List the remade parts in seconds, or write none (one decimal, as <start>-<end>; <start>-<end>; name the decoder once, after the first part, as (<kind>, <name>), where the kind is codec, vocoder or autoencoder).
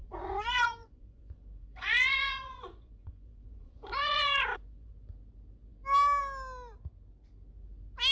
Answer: 0.0-4.9 (vocoder, Vocos)